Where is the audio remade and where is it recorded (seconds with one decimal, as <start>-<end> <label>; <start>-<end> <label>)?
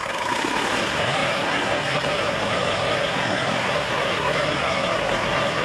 0.0-5.6 remade